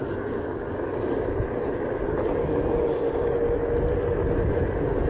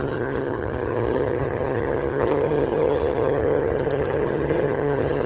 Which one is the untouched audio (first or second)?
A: first